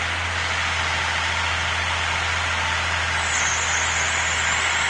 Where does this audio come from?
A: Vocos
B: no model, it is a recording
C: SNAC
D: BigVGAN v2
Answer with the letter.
B